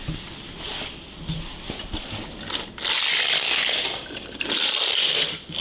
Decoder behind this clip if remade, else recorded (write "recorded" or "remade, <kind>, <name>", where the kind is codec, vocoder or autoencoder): remade, vocoder, BigVGAN v2